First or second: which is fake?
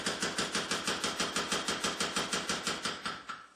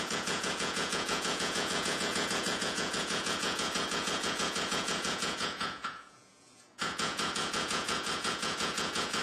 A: second